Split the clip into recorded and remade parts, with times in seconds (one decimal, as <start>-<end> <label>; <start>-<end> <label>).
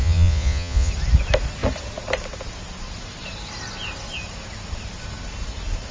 0.0-0.9 remade; 0.9-5.9 recorded